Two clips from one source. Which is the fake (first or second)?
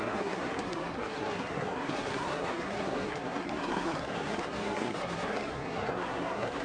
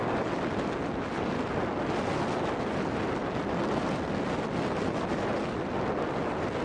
first